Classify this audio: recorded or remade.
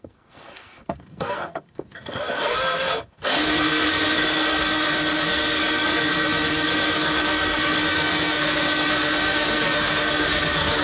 remade